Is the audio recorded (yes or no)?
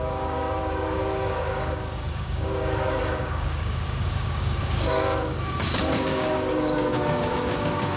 no